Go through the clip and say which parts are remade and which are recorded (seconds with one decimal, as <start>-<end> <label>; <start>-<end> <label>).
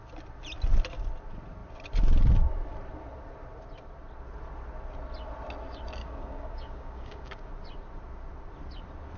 0.0-6.0 recorded; 6.0-7.5 remade; 7.5-9.2 recorded